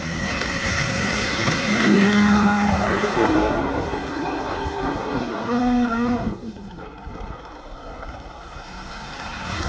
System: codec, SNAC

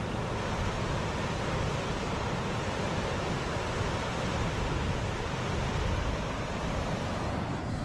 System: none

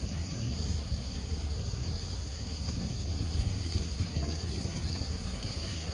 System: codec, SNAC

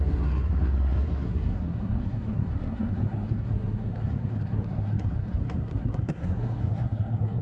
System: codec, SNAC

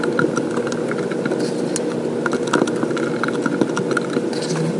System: none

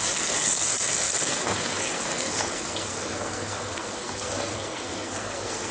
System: codec, SNAC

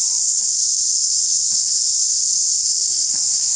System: codec, SNAC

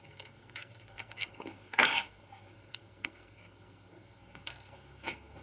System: codec, SNAC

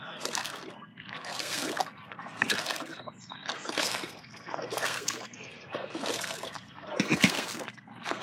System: codec, SNAC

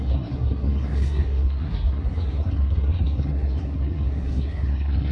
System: codec, SNAC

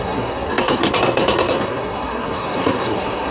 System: codec, SNAC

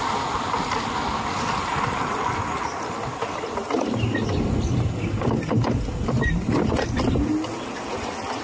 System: none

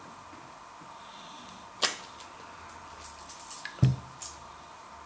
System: none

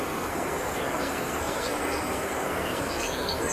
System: codec, SNAC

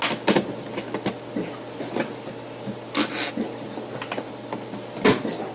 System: none